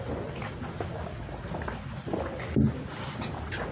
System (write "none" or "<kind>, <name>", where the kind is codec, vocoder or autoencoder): none